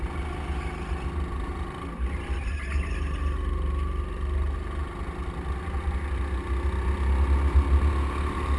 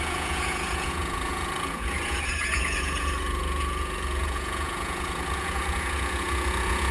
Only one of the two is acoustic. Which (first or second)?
first